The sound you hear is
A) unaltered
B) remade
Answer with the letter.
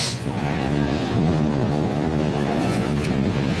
B